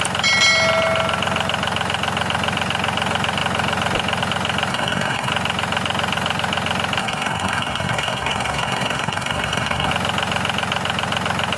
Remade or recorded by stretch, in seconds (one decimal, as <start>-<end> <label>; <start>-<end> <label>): 0.0-4.7 recorded; 4.7-5.3 remade; 5.3-7.0 recorded; 7.0-9.9 remade; 9.9-11.6 recorded